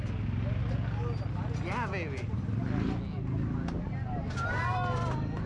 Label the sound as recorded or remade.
recorded